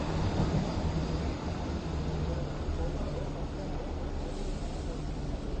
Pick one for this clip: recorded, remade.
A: recorded